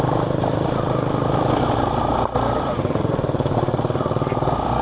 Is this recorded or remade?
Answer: recorded